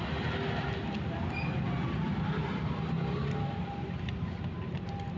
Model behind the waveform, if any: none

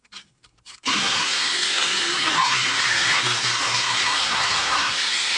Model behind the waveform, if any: codec, SNAC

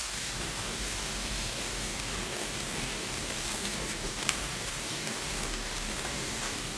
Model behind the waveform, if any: codec, DAC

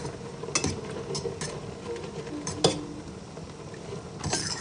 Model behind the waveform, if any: none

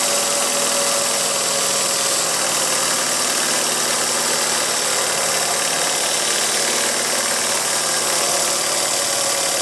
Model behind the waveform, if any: none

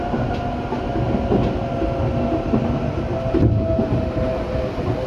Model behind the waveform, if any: none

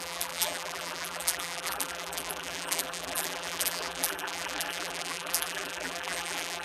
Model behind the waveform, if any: vocoder, BigVGAN v2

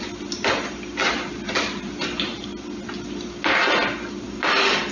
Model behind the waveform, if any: none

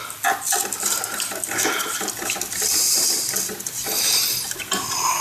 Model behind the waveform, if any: none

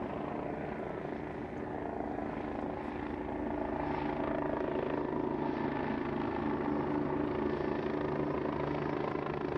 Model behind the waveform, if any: none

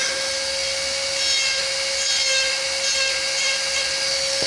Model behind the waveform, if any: none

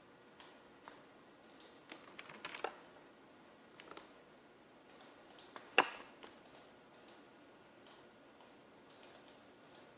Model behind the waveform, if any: none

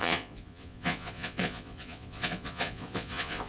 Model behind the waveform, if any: vocoder, Vocos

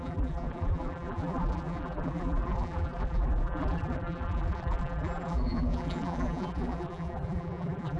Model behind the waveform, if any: vocoder, BigVGAN v2